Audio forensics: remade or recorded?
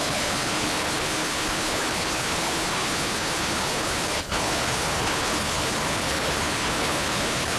remade